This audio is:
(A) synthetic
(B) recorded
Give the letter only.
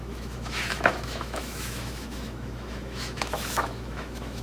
A